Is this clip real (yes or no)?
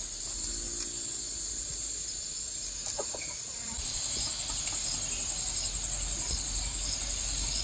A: yes